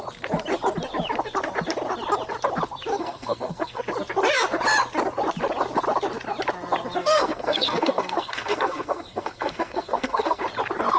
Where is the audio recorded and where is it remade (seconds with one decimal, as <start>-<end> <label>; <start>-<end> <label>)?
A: 0.0-2.9 recorded; 2.9-3.8 remade; 3.8-7.0 recorded; 7.0-10.4 remade; 10.4-11.0 recorded